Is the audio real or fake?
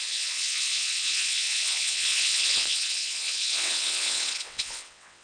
fake